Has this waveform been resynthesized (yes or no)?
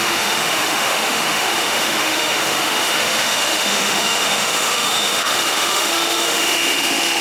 yes